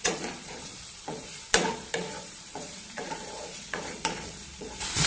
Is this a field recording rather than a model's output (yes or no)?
no